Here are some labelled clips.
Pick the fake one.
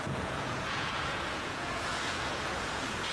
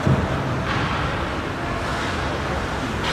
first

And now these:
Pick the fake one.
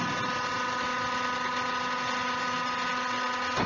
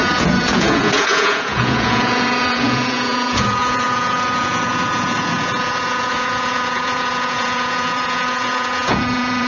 second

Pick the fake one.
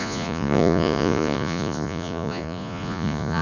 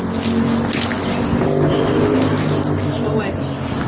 first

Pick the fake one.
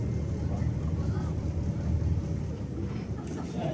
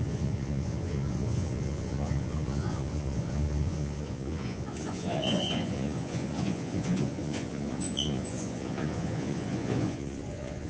second